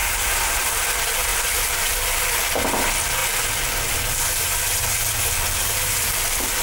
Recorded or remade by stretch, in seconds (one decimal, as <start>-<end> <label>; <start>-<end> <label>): 0.0-0.7 remade; 0.7-6.6 recorded